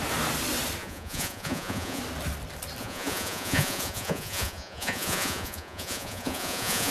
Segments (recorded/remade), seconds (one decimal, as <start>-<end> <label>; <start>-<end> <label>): 0.0-0.8 recorded; 0.8-2.0 remade; 2.0-2.8 recorded; 2.8-6.9 remade